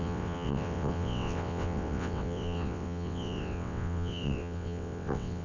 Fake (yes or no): yes